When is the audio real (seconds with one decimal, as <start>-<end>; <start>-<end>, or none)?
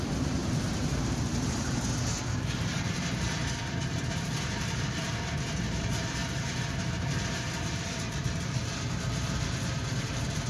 none